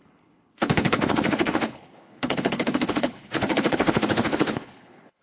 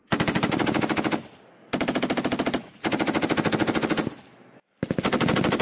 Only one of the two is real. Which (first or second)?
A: second